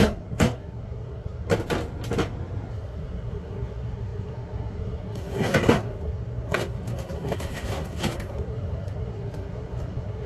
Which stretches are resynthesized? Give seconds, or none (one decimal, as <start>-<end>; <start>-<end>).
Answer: 0.0-1.5; 2.7-10.3